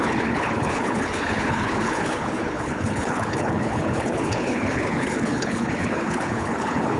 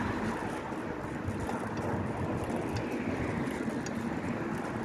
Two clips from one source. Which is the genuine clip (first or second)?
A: second